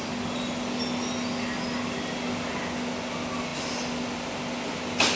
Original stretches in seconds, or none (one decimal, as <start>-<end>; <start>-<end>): 0.0-5.2